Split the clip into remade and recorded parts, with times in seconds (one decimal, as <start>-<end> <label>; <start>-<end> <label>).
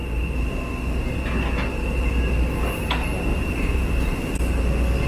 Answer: 0.0-0.5 remade; 0.5-3.3 recorded; 3.3-4.4 remade; 4.4-5.1 recorded